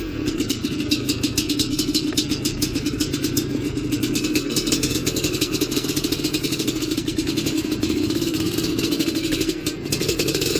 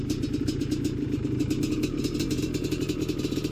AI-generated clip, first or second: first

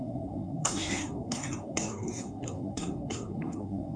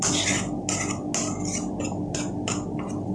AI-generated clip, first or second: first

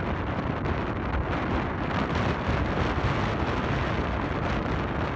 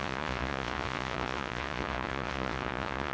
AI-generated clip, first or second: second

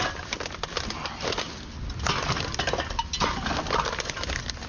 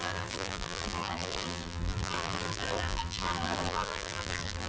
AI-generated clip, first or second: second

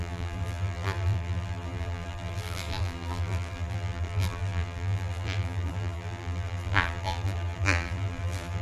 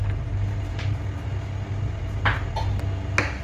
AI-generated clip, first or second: first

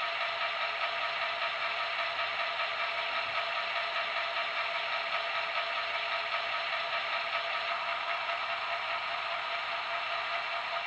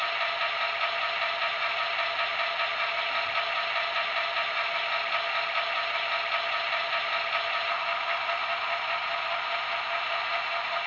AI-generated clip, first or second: first